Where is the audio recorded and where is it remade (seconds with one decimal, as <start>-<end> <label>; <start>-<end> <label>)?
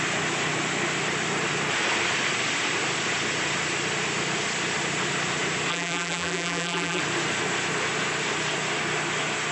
0.0-5.7 recorded; 5.7-7.0 remade; 7.0-9.5 recorded